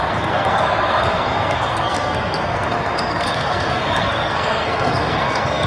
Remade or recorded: remade